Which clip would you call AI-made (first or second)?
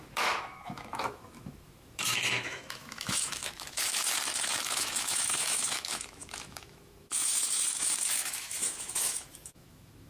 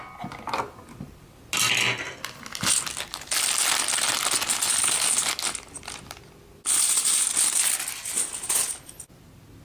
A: first